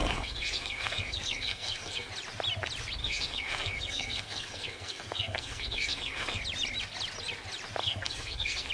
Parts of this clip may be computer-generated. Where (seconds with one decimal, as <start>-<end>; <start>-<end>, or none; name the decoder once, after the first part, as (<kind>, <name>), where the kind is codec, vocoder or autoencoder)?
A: 0.0-2.1 (codec, SNAC); 3.0-6.4; 7.8-8.7

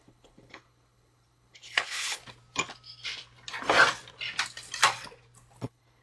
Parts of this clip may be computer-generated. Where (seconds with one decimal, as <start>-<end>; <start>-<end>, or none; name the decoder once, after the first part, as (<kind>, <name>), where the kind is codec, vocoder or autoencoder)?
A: 0.0-2.2 (codec, HILCodec); 5.6-6.0

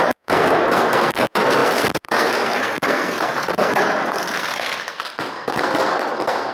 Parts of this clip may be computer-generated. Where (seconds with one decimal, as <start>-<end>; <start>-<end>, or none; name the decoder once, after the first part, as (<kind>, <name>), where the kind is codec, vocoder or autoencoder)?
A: 0.0-6.5 (codec, SNAC)

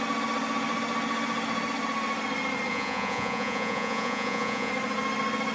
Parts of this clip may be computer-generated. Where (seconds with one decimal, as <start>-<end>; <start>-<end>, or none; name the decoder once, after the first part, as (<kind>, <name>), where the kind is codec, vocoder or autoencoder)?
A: 2.7-4.7 (vocoder, Vocos)

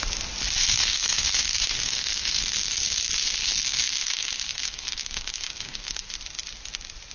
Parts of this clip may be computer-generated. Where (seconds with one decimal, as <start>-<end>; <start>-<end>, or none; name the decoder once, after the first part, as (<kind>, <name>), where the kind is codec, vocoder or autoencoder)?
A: 0.6-2.8 (codec, SNAC); 3.4-6.1